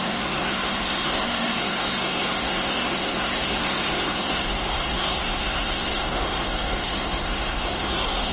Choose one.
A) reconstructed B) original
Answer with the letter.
A